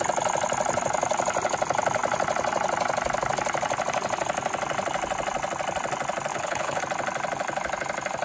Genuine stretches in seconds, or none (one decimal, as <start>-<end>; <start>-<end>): 0.0-6.3; 6.8-8.2